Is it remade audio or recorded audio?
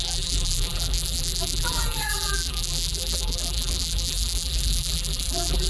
remade